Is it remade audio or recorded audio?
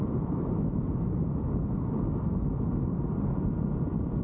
recorded